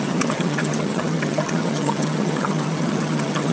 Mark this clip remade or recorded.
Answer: remade